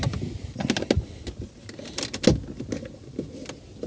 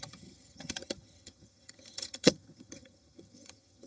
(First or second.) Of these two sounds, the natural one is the first